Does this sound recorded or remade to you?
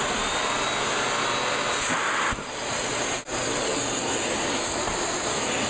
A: recorded